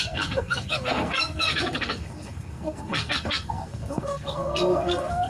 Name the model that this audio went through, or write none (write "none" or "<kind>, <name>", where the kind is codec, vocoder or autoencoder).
codec, SNAC